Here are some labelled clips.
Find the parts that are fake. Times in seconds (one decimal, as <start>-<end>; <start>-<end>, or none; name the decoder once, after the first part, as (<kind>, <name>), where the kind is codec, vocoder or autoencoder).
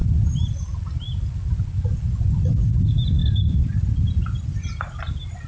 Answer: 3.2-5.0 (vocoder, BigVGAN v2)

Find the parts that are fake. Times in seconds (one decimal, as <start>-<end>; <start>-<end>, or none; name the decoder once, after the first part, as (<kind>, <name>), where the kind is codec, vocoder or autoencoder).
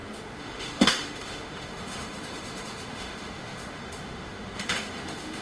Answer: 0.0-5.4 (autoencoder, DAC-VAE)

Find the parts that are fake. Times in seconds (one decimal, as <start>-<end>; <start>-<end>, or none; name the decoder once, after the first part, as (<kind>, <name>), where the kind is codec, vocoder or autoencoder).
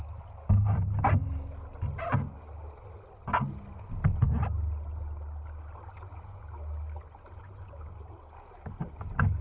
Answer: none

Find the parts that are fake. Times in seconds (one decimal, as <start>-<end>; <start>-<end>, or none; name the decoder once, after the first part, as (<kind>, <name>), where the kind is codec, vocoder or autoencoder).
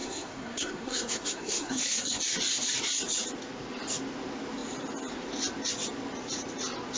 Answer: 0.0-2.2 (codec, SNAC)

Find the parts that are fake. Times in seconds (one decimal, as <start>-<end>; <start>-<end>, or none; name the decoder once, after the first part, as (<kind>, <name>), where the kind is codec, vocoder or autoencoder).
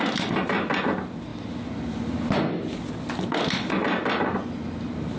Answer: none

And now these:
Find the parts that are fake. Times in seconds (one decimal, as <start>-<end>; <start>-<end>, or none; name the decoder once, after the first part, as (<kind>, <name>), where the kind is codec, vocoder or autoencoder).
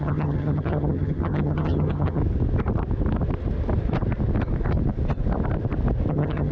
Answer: 0.0-2.2 (vocoder, HiFi-GAN); 6.1-6.5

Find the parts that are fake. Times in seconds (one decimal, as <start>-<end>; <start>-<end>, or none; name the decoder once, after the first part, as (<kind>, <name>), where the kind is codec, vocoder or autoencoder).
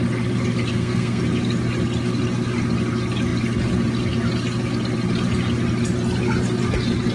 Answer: 0.7-1.2 (codec, SNAC)